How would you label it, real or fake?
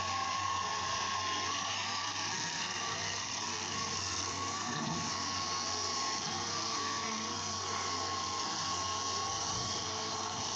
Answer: fake